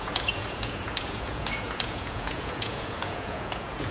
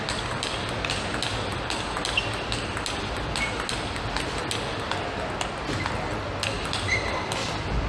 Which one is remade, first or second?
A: first